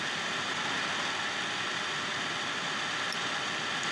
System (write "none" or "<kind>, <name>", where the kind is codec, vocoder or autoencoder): none